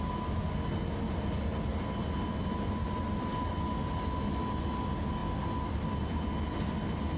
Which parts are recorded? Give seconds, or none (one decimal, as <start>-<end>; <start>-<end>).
0.0-7.2